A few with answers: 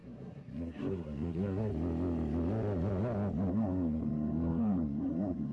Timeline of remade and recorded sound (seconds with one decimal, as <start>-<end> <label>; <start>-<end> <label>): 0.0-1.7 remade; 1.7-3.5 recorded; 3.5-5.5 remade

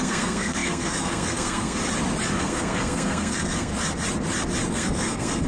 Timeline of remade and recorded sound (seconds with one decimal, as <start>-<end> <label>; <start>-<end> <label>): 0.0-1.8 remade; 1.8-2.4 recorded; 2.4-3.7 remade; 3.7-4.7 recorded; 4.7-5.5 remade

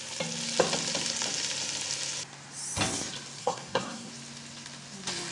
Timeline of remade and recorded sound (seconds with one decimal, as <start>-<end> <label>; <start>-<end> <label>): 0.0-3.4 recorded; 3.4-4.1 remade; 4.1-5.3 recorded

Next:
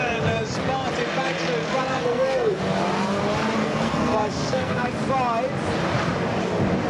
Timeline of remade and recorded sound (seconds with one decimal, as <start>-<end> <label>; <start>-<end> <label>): 0.0-1.9 recorded; 1.9-2.6 remade; 2.6-3.6 recorded; 3.6-4.9 remade; 4.9-6.9 recorded

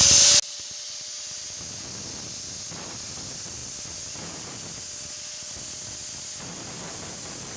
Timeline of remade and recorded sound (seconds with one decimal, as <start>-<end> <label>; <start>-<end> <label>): 0.0-7.6 recorded